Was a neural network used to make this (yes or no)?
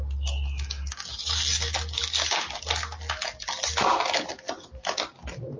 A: no